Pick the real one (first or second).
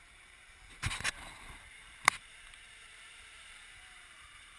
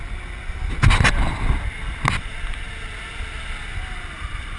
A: second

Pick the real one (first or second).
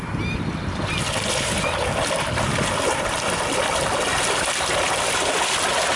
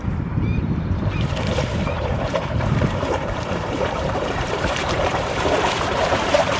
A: first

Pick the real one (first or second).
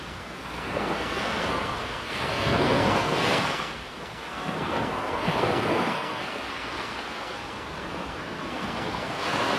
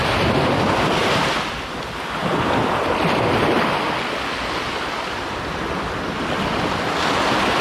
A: second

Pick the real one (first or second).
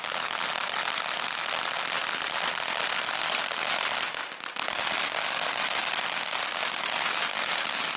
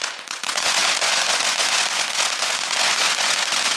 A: first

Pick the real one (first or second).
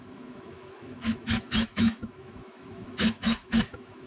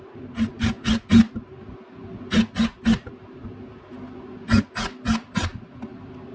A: second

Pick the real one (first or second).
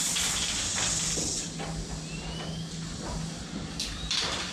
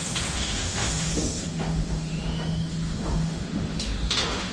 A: first